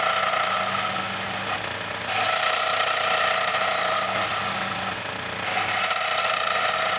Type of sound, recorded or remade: recorded